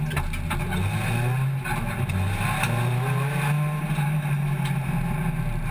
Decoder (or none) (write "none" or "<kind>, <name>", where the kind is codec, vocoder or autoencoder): none